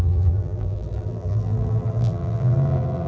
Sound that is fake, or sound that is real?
fake